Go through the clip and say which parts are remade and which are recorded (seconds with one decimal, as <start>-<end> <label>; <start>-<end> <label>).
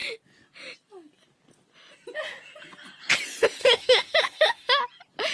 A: 0.0-3.6 recorded; 3.6-4.8 remade; 4.8-5.3 recorded